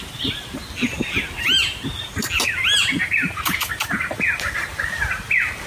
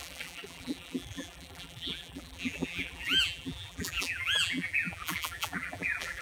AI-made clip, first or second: second